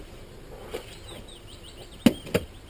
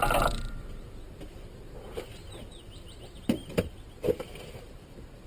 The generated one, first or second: second